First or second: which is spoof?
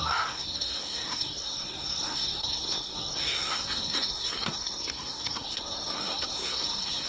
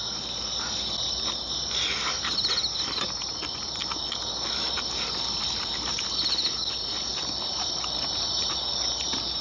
first